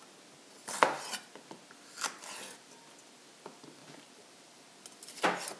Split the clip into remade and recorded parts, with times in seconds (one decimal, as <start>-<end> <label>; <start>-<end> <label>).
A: 0.0-3.8 recorded; 3.8-4.8 remade; 4.8-5.6 recorded